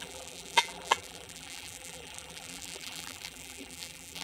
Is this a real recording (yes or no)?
no